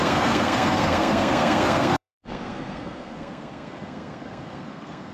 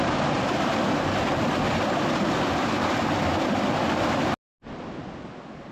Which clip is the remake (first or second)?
first